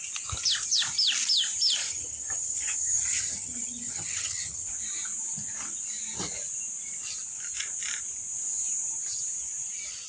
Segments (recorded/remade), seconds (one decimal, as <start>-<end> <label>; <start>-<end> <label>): 0.0-1.8 recorded; 1.8-4.7 remade; 4.7-10.1 recorded